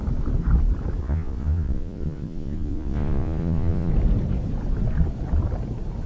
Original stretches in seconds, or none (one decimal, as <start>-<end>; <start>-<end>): 0.0-1.0; 3.9-6.1